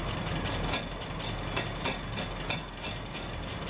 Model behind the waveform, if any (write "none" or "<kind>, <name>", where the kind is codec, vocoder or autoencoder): none